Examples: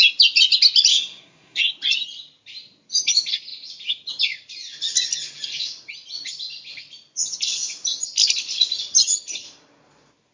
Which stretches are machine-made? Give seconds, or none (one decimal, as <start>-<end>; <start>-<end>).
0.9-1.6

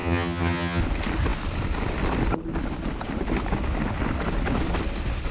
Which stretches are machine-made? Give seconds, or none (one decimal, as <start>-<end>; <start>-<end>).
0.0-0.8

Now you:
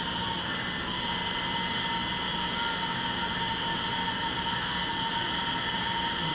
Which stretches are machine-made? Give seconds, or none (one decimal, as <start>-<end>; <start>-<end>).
none